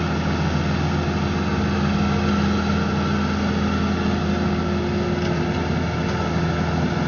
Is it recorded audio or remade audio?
recorded